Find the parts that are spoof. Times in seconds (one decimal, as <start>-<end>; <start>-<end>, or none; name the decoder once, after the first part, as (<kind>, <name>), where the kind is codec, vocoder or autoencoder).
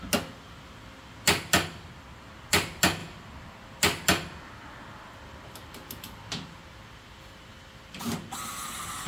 none